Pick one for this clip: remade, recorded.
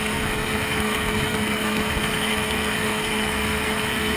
remade